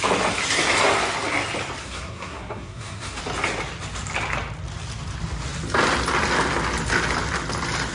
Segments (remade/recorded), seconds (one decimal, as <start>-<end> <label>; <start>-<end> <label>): 0.0-1.8 recorded; 1.8-3.2 remade; 3.2-7.9 recorded